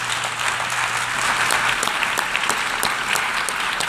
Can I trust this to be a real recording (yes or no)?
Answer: yes